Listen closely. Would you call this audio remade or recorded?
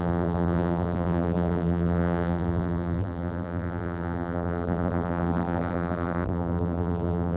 remade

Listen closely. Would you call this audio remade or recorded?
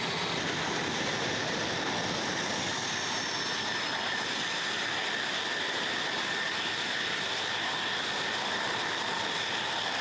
recorded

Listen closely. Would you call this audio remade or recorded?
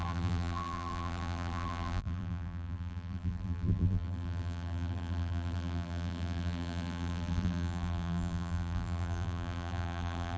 remade